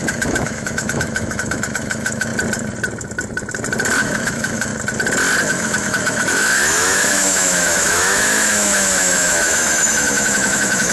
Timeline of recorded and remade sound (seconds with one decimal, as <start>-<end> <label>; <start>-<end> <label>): 0.0-2.3 remade; 2.3-4.0 recorded; 4.0-4.7 remade; 4.7-5.5 recorded; 5.5-10.9 remade